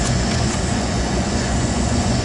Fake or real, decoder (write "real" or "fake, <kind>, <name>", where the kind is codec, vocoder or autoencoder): fake, vocoder, Vocos